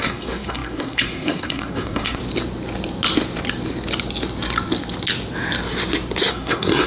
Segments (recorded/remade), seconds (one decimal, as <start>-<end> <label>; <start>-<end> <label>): 0.0-2.2 remade; 2.2-6.3 recorded; 6.3-6.9 remade